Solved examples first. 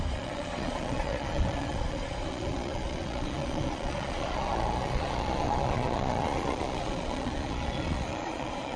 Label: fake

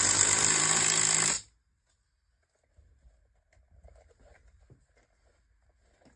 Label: real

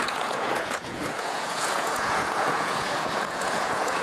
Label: fake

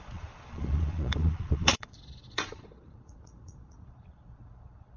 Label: fake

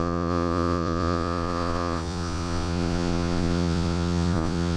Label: fake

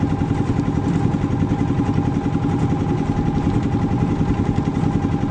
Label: real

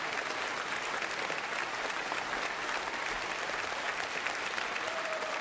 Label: real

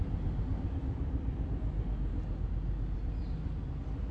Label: real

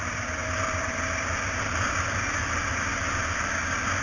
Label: real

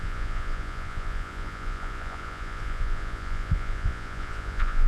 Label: fake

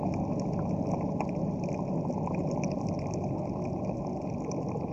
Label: real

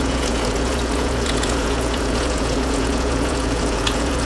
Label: fake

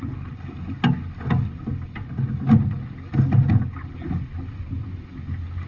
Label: real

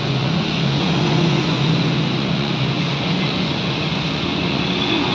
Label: fake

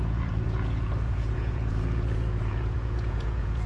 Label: fake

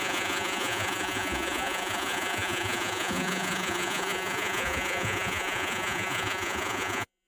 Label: fake